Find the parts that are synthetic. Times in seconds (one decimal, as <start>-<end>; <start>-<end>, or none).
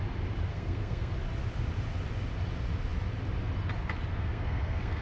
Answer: 0.5-1.1; 4.2-5.0